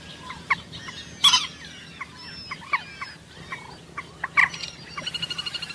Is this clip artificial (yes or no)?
no